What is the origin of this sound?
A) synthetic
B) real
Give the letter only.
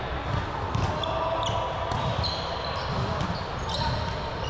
B